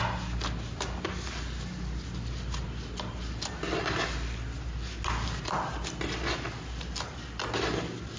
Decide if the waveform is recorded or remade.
recorded